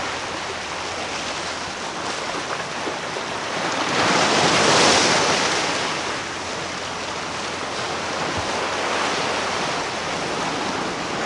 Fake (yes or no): no